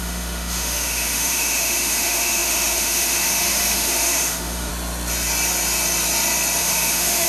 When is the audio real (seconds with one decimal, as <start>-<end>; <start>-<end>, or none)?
4.7-6.6